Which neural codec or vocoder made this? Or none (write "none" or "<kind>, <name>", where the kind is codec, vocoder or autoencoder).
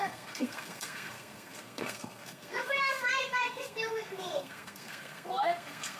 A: codec, SNAC